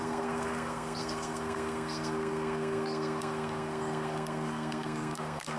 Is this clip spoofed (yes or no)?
yes